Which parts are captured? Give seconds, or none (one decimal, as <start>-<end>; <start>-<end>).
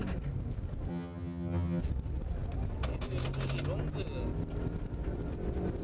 0.0-0.9; 1.8-5.8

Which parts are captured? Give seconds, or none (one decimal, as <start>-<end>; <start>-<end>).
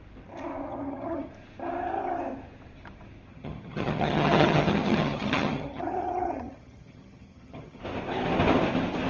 0.0-0.7; 1.3-3.3; 7.8-9.1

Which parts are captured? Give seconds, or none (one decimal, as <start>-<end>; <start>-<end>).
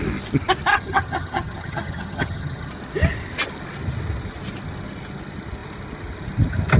0.0-0.7; 2.7-6.8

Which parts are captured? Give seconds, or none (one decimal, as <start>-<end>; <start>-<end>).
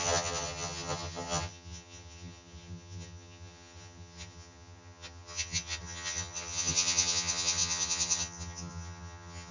none